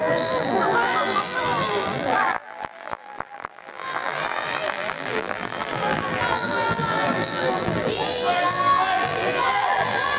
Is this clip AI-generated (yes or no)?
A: yes